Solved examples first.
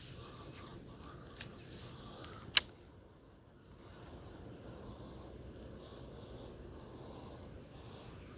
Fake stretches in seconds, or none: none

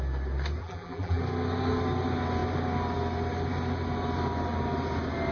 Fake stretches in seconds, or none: 0.6-1.2 (vocoder, BigVGAN v2)

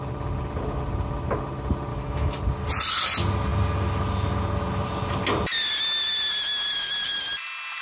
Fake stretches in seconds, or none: 1.9-2.4 (autoencoder, DAC-VAE)

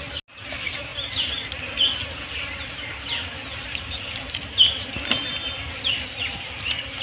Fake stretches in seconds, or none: none

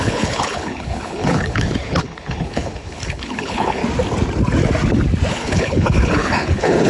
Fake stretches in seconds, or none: 0.0-3.8 (codec, HILCodec); 5.3-6.9

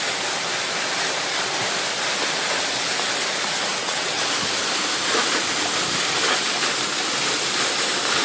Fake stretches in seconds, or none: 3.7-4.2 (vocoder, WaveNeXt)